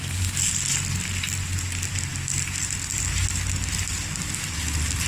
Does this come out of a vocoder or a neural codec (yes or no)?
no